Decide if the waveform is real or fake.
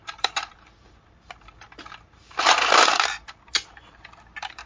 fake